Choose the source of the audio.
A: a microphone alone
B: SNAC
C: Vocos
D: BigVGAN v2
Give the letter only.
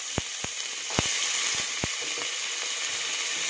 A